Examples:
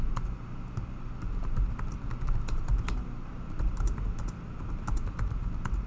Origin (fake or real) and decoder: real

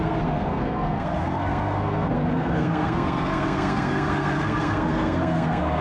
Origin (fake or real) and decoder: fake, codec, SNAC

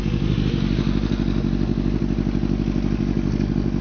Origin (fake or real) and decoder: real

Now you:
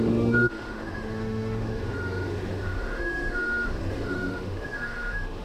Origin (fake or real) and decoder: fake, autoencoder, DAC-VAE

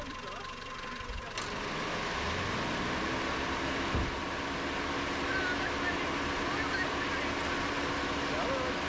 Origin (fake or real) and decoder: real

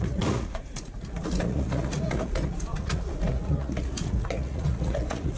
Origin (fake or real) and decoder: fake, vocoder, Vocos